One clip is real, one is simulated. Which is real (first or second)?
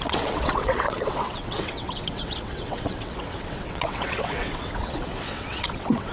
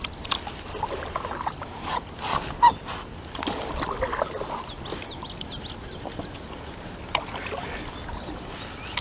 second